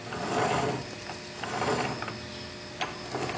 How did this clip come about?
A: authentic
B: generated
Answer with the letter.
A